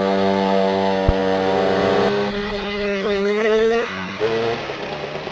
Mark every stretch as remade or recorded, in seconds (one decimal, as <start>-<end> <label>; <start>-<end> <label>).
0.0-2.3 recorded; 2.3-4.2 remade; 4.2-5.3 recorded

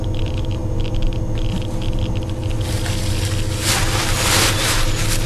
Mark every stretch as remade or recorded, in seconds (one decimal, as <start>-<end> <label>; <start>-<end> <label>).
0.0-5.3 recorded

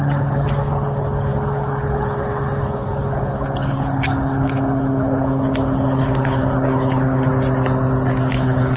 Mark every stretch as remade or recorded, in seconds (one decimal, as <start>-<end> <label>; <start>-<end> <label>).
0.0-7.3 remade; 7.3-8.3 recorded; 8.3-8.8 remade

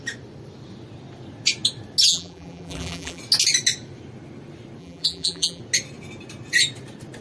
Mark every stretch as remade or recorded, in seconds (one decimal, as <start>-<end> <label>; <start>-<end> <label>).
0.0-2.1 recorded; 2.1-3.2 remade; 3.2-4.8 recorded; 4.8-5.6 remade; 5.6-7.2 recorded